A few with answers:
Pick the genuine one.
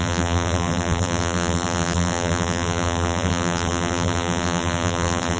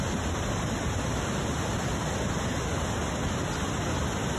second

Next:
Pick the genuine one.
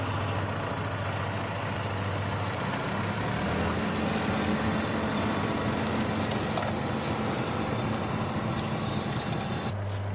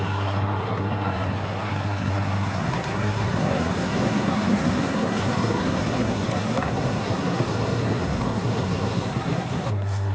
first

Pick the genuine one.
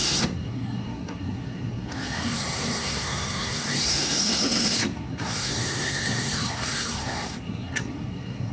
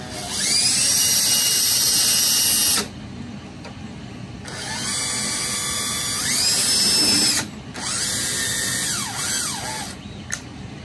second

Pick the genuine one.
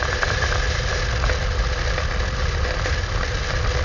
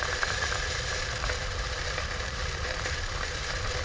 first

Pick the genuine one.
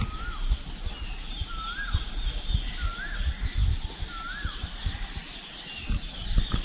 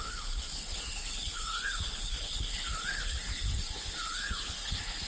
first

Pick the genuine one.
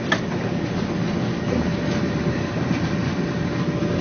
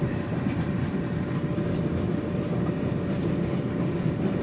first